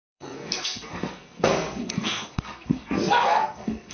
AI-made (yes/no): yes